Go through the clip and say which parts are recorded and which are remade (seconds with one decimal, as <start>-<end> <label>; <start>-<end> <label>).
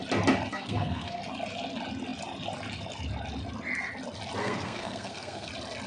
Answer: 0.0-0.5 recorded; 0.5-1.2 remade; 1.2-4.4 recorded; 4.4-5.5 remade; 5.5-5.9 recorded